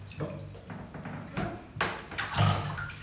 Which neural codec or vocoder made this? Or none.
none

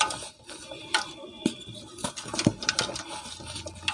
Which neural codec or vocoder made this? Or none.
none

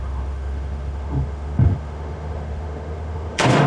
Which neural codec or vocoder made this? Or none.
autoencoder, DAC-VAE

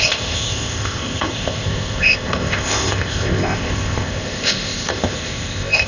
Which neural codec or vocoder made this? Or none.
codec, ZipCodec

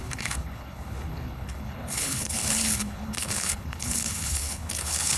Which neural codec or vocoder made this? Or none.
codec, HILCodec